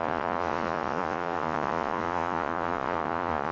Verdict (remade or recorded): remade